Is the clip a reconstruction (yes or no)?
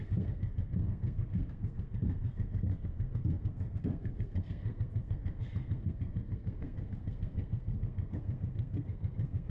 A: yes